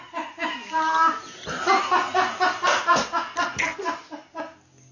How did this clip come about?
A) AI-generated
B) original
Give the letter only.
B